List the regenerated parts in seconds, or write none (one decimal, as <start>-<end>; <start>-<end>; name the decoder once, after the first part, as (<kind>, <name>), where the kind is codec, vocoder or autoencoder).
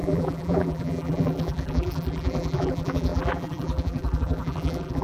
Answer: 0.0-5.0 (vocoder, BigVGAN v2)